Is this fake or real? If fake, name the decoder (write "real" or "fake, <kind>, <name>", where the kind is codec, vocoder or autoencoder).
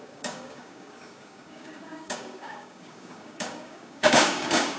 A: fake, codec, DAC